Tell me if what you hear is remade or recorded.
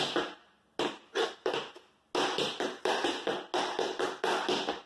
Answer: recorded